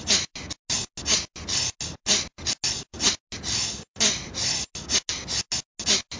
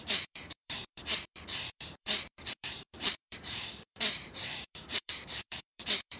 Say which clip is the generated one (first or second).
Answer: second